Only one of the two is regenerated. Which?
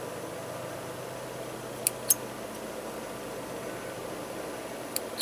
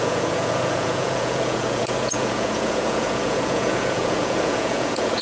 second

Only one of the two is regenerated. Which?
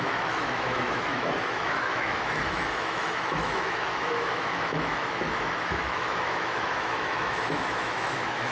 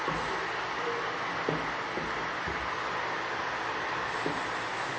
first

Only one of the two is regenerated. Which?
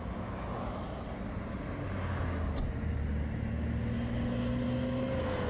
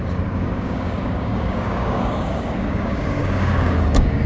second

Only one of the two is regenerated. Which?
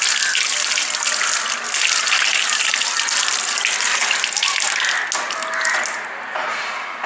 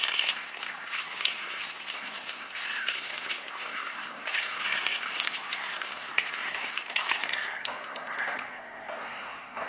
second